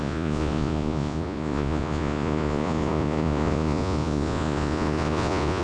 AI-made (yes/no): yes